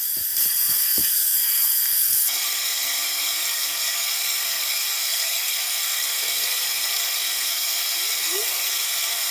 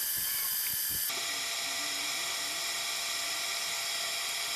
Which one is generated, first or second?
first